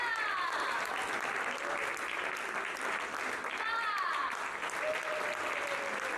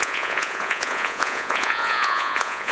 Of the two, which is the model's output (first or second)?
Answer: second